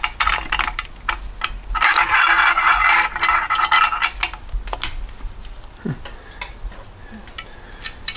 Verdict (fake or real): real